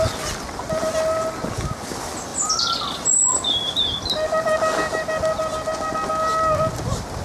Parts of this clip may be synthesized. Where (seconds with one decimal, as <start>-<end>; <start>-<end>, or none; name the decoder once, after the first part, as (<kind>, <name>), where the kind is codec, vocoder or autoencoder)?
none